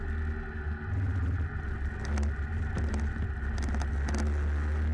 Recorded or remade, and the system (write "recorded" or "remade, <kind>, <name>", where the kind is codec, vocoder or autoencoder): recorded